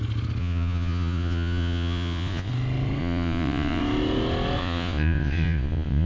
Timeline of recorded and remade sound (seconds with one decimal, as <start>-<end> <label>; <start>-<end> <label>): 0.0-0.4 recorded; 0.4-2.5 remade; 2.5-3.0 recorded; 3.0-3.8 remade; 3.8-4.6 recorded; 4.6-6.1 remade